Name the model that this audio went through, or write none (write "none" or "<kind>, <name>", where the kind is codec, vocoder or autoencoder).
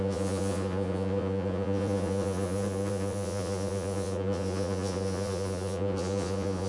vocoder, Vocos